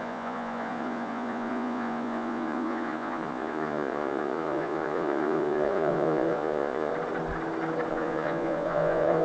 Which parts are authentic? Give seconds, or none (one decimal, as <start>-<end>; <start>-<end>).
6.9-7.9